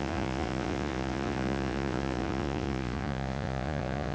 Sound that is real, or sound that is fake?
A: fake